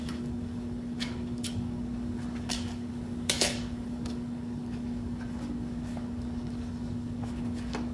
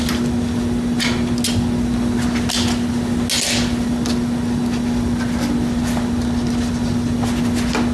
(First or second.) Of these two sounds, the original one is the second